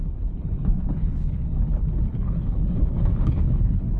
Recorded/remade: remade